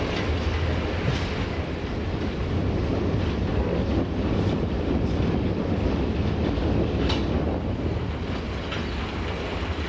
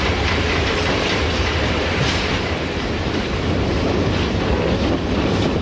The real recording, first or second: first